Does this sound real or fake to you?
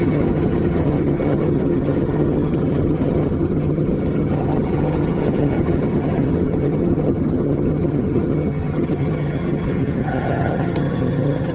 fake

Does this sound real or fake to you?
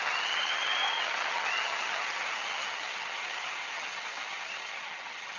fake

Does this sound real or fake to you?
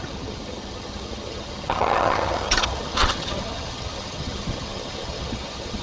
fake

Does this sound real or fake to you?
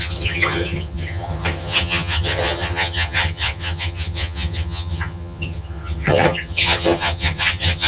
fake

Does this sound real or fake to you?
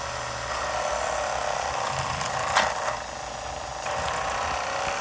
real